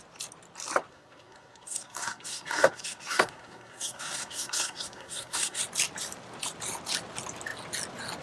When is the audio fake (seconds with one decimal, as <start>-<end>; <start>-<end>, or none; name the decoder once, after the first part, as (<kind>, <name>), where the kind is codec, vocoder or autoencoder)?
0.9-5.6 (codec, SNAC)